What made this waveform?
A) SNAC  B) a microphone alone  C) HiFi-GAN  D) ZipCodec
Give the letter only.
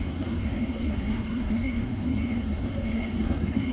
A